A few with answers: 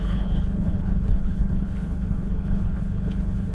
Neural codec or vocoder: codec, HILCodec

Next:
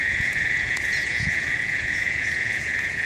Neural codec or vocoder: vocoder, Vocos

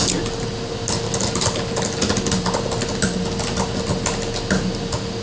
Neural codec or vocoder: none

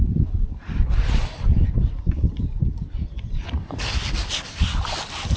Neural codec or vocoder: none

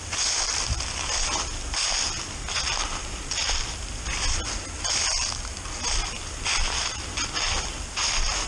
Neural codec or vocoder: none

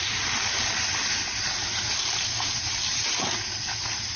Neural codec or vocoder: none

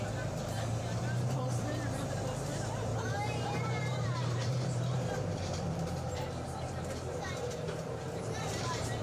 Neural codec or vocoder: vocoder, BigVGAN v2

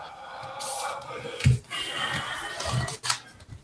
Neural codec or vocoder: none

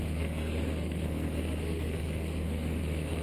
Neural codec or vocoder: codec, SNAC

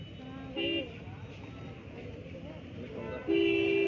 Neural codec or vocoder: none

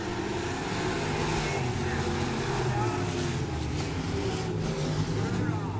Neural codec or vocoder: none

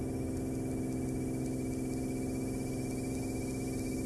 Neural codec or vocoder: none